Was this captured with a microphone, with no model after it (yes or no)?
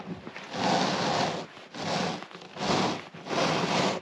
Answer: yes